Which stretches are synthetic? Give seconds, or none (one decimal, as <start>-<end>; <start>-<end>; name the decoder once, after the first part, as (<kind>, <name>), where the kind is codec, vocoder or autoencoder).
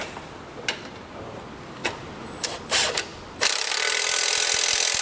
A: none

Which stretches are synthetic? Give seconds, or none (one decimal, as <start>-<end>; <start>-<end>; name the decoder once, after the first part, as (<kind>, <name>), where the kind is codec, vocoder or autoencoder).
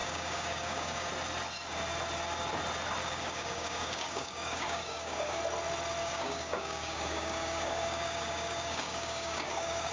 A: 0.0-1.1 (codec, DAC); 3.0-5.4; 6.0-9.9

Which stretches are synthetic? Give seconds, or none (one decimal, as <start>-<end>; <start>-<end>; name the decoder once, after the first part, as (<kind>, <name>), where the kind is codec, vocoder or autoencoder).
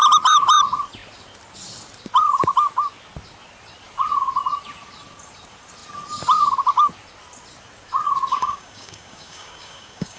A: 8.3-10.2 (codec, DAC)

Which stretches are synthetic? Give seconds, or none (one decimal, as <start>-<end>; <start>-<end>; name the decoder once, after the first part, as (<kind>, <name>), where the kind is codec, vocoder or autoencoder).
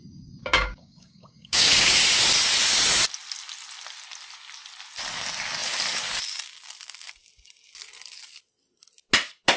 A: 0.4-2.0 (codec, DAC)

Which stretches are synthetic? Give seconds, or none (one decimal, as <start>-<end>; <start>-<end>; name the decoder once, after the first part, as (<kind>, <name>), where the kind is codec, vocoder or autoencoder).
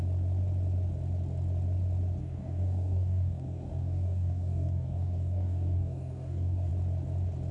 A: 2.2-6.7 (codec, DAC)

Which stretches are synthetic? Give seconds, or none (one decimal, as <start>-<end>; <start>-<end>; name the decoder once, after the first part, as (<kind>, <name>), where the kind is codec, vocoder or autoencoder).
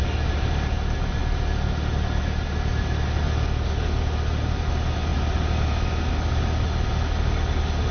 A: none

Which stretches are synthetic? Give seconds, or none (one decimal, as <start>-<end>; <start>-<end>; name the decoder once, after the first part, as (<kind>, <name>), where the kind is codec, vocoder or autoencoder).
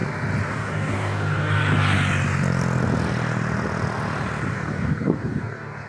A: 0.5-1.6 (codec, DAC); 4.5-5.9